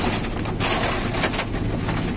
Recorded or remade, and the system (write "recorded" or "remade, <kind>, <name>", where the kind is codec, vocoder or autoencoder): recorded